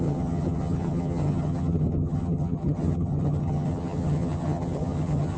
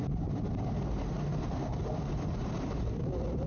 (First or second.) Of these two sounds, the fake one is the first